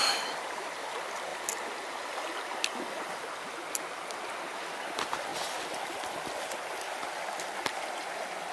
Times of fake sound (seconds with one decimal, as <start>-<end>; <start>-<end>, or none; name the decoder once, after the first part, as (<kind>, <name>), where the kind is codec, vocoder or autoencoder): none